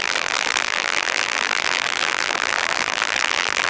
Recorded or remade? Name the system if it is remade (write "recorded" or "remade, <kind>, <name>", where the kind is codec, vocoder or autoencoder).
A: remade, vocoder, BigVGAN v2